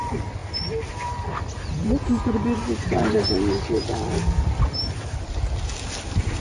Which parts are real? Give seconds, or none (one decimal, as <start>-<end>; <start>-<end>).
0.0-6.4